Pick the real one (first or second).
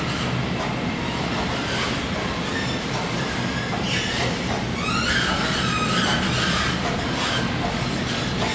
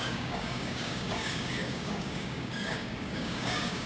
first